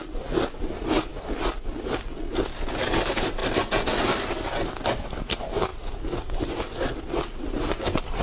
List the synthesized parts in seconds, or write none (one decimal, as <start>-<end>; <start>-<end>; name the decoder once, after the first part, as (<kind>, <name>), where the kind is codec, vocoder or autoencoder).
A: none